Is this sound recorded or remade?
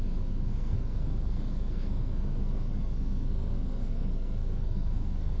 remade